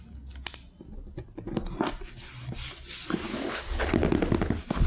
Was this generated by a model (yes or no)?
no